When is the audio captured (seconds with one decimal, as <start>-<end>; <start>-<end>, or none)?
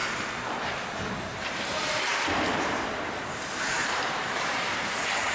0.0-0.6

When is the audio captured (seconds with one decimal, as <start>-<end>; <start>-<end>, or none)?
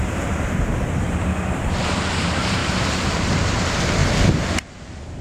1.3-2.1; 4.0-4.8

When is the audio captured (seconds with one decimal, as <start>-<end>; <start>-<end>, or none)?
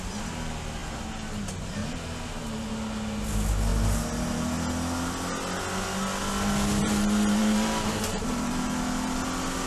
0.0-1.8; 2.7-6.8; 8.7-9.7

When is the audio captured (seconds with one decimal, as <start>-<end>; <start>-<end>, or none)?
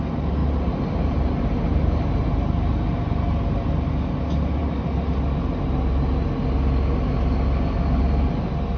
0.0-0.4; 3.4-8.8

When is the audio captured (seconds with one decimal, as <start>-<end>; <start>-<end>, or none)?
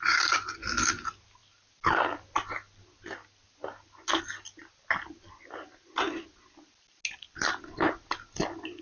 0.0-8.8